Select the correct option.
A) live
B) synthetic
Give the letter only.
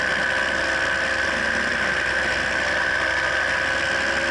A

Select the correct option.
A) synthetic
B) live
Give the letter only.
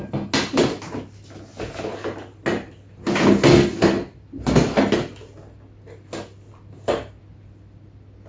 B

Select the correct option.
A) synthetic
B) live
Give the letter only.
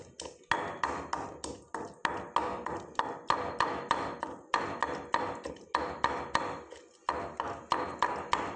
B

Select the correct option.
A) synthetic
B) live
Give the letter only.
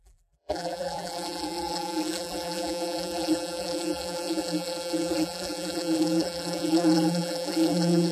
A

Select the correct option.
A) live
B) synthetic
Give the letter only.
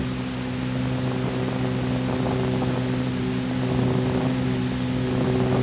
A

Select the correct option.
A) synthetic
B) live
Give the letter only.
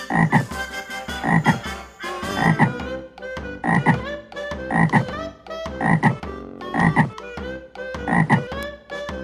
A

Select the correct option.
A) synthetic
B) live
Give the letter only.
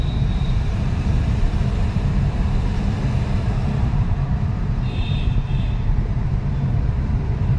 A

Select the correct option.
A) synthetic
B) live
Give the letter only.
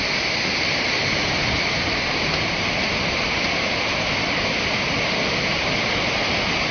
B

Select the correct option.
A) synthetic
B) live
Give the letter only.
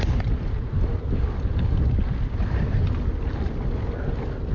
A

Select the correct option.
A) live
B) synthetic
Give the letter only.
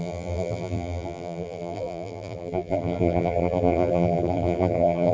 B